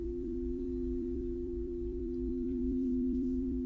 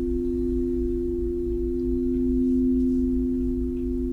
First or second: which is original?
second